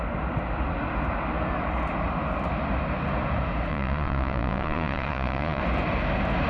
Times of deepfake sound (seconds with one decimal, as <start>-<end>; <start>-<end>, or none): 3.7-5.6